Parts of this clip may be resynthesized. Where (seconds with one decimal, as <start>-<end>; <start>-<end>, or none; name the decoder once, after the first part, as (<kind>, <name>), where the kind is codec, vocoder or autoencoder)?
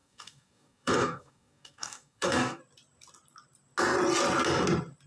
0.0-2.6 (codec, DAC)